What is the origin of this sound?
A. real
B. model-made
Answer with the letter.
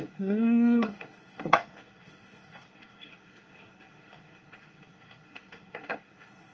B